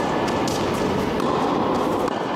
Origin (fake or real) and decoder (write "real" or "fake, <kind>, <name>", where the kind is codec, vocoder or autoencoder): real